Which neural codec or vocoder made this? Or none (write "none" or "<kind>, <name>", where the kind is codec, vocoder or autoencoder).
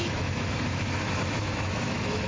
autoencoder, DAC-VAE